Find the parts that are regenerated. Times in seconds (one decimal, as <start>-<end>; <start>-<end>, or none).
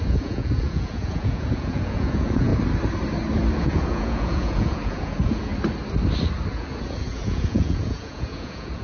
0.0-2.5; 3.6-5.5; 6.5-8.8